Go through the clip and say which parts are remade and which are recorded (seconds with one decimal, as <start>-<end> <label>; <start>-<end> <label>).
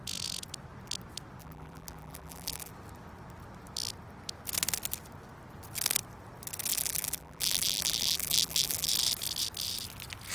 0.0-1.4 recorded; 1.4-2.7 remade; 2.7-6.7 recorded; 6.7-8.9 remade; 8.9-10.3 recorded